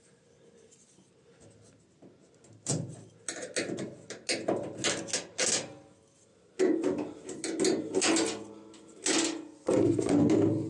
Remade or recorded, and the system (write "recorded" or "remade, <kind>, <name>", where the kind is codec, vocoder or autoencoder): recorded